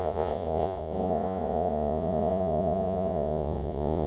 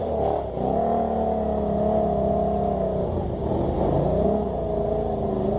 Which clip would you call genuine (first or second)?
second